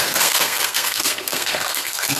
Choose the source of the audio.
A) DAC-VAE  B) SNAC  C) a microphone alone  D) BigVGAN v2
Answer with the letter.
B